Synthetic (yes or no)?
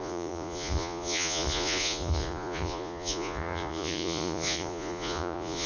yes